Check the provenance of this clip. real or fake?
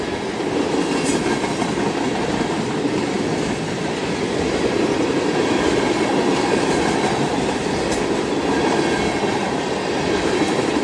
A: real